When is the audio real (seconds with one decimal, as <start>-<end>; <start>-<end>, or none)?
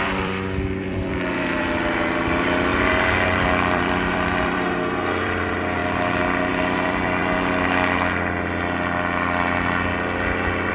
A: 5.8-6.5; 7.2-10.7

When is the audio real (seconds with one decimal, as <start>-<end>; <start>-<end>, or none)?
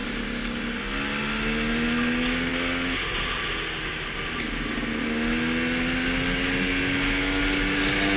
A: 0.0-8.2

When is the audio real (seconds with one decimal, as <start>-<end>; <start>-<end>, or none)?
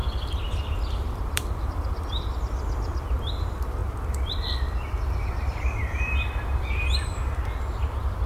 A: 3.8-5.2; 7.1-8.3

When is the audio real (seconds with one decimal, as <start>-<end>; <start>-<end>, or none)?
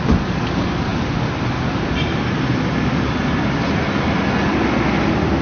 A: 0.0-5.4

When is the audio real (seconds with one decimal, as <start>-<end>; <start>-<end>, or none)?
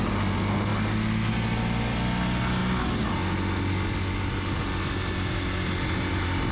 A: 0.0-6.5